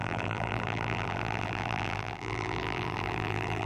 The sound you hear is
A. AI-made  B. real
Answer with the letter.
A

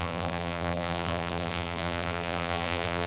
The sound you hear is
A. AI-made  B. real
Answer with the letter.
A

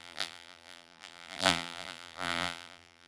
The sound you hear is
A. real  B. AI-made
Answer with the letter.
B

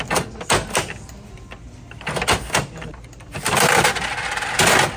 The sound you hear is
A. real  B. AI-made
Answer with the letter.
A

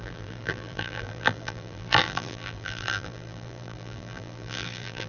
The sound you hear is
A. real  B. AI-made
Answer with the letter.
B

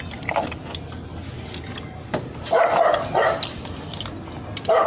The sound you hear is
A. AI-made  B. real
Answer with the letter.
B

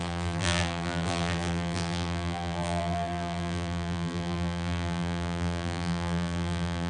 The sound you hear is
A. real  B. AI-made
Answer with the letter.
B